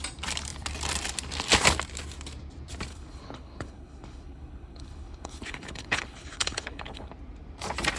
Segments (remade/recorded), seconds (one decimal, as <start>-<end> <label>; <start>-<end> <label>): 0.0-2.9 recorded; 2.9-7.1 remade; 7.1-8.0 recorded